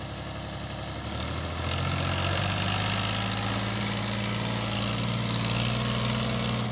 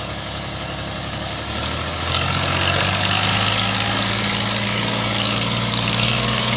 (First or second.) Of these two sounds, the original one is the first